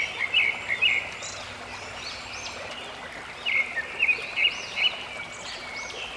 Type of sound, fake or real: real